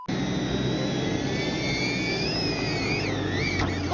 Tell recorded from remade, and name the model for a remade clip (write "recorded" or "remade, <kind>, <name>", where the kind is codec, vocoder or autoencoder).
recorded